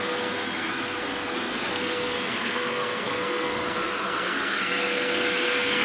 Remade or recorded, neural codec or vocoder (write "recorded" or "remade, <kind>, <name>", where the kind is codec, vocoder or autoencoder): remade, codec, SNAC